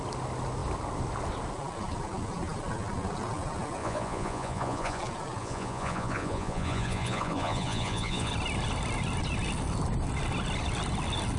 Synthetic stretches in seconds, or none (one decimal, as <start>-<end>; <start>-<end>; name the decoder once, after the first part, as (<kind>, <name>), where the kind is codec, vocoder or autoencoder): 3.8-5.0 (vocoder, Vocos); 5.4-8.3